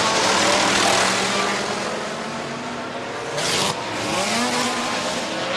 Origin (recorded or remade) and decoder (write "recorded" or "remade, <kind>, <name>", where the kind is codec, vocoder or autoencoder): recorded